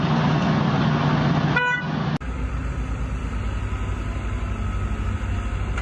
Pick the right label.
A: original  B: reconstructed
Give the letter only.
A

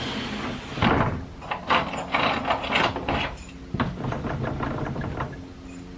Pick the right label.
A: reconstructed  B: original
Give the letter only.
B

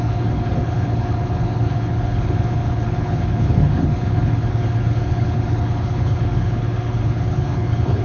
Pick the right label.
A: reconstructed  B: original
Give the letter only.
A